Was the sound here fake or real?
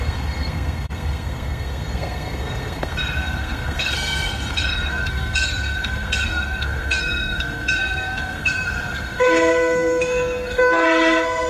fake